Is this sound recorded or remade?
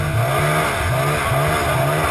recorded